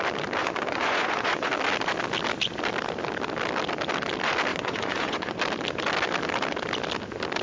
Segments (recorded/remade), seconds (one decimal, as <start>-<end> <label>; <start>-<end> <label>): 0.0-0.4 recorded; 0.4-1.5 remade; 1.5-4.5 recorded; 4.5-5.4 remade; 5.4-7.4 recorded

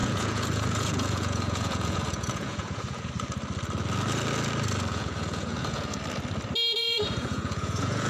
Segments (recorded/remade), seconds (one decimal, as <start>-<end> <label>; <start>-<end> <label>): 0.0-3.1 remade; 3.1-4.9 recorded; 4.9-6.0 remade; 6.0-6.8 recorded; 6.8-8.1 remade